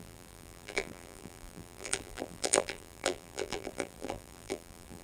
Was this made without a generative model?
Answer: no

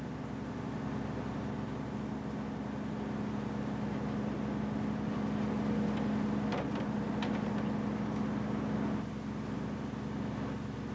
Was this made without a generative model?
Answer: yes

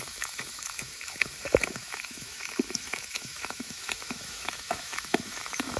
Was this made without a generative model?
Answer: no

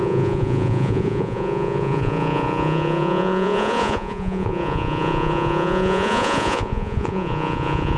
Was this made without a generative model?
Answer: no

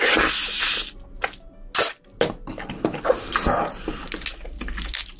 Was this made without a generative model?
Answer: yes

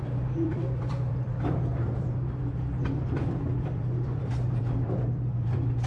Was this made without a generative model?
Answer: no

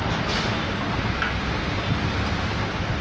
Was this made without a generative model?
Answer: yes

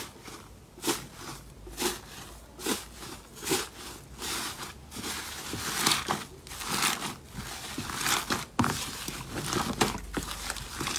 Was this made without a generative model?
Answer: yes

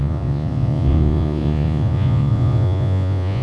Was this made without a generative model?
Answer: no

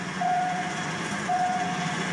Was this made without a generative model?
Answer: no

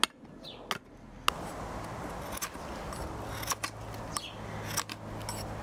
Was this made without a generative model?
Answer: yes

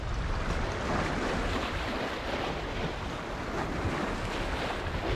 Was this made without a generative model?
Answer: yes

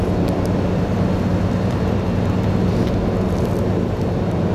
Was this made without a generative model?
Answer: yes